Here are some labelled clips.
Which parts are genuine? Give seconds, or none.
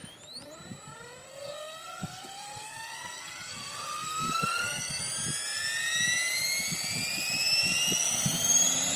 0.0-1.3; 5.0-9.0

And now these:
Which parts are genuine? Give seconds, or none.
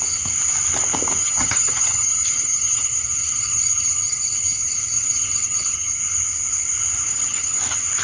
0.0-1.2; 6.0-7.1; 7.6-8.0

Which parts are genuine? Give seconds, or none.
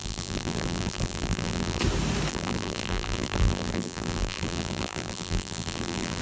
1.8-2.3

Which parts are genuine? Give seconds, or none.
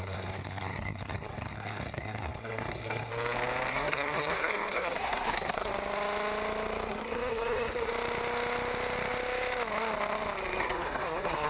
3.1-3.7; 5.7-6.9; 7.9-10.6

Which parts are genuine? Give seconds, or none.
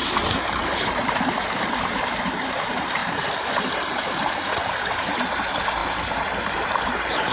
5.8-6.5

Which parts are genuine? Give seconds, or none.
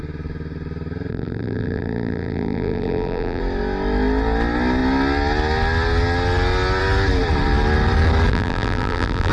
0.0-1.1; 3.4-8.3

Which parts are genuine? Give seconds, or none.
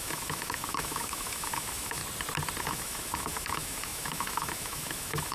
2.0-2.6